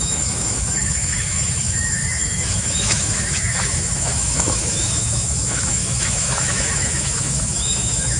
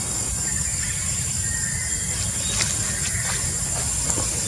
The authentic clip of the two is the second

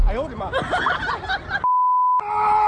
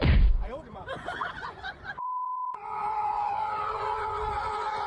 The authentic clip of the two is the first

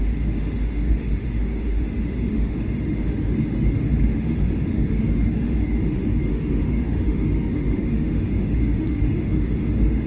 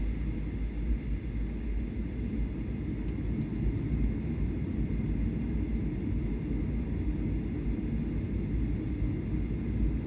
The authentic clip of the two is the second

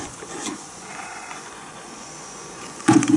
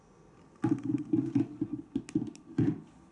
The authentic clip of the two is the second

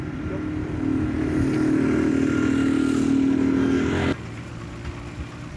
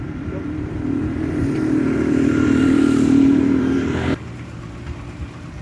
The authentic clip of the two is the first